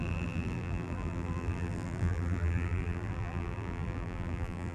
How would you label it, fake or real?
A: fake